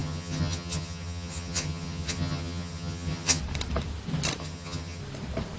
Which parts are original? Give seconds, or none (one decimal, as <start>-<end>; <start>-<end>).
3.4-4.4; 5.0-5.6